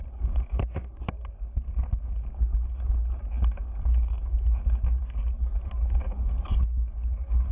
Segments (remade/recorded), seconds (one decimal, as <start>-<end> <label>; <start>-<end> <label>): 0.0-7.5 recorded